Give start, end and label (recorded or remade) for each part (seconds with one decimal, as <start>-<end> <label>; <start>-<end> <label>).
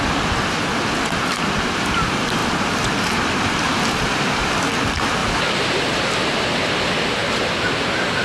0.0-8.2 recorded